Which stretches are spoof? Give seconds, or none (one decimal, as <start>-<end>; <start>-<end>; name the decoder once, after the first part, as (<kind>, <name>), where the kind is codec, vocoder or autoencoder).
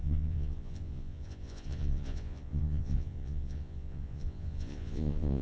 0.0-5.4 (vocoder, Vocos)